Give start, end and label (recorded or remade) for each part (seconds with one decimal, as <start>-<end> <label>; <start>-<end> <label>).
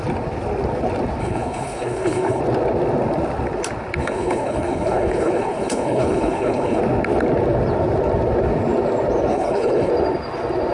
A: 0.0-1.2 recorded; 1.2-2.4 remade; 2.4-4.0 recorded; 4.0-6.8 remade; 6.8-9.3 recorded; 9.3-9.9 remade; 9.9-10.7 recorded